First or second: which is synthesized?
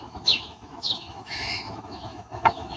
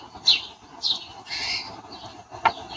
first